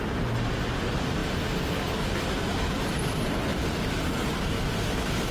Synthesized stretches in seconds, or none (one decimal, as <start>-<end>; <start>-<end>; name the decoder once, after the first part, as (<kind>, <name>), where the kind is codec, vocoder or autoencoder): 1.2-1.8 (vocoder, BigVGAN v2); 3.5-4.5